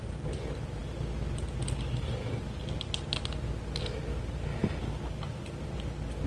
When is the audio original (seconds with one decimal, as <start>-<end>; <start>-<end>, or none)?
0.0-0.8; 2.8-4.6; 5.4-6.3